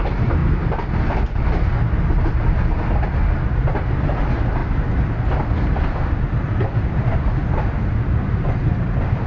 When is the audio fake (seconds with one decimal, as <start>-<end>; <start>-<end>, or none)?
0.0-0.4; 3.5-4.6; 6.2-7.4; 8.3-9.3